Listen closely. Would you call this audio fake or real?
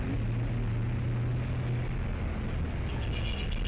real